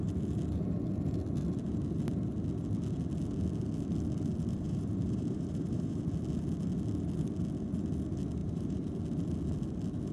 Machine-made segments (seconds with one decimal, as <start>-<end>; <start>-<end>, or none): 4.5-6.0; 8.4-9.0